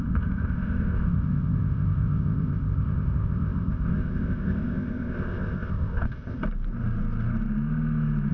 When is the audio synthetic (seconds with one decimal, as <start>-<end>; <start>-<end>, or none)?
0.0-6.4